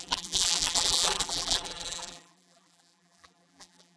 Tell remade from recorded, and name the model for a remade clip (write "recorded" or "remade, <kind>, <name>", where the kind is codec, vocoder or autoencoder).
remade, vocoder, BigVGAN v2